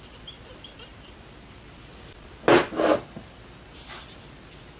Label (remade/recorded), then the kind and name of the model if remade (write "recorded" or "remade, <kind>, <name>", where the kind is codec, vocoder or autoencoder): recorded